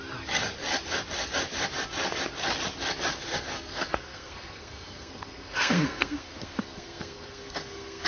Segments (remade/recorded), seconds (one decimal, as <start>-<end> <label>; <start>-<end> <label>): 0.0-3.1 recorded; 3.1-8.1 remade